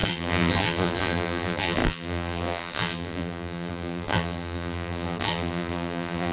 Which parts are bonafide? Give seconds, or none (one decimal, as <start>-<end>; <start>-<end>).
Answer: none

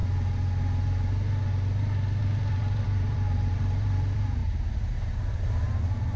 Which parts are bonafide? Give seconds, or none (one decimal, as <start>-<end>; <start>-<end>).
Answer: 0.0-2.2